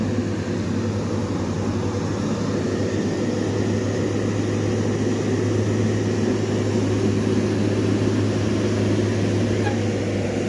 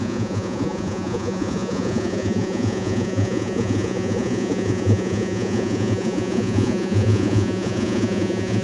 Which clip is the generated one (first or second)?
second